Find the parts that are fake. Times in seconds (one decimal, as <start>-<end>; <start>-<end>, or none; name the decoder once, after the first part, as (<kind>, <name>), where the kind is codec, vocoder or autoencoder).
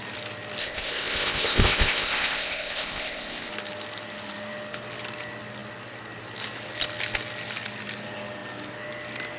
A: 0.6-3.5 (codec, ZipCodec)